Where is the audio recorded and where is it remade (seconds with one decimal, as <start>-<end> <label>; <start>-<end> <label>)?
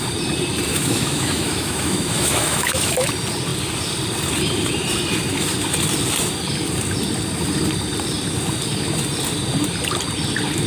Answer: 0.0-0.7 recorded; 0.7-3.1 remade; 3.1-10.7 recorded